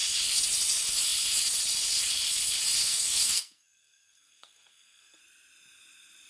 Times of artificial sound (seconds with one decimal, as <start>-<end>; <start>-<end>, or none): 2.8-5.2